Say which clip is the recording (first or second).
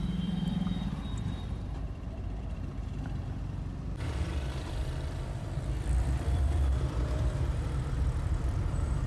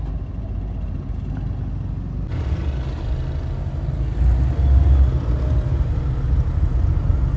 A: second